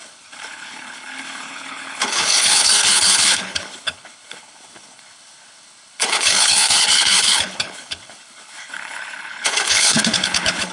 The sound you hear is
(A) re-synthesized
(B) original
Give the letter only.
A